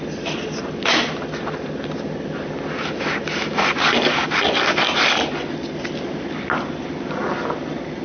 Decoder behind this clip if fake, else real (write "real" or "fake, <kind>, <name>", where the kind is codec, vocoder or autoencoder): real